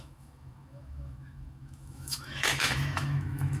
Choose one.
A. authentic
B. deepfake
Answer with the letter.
B